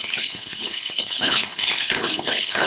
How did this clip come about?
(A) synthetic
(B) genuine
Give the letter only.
A